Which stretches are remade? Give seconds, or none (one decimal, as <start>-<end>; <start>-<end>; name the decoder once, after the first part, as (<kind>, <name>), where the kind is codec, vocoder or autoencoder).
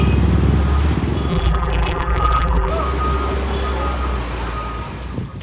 1.3-2.7 (vocoder, BigVGAN v2)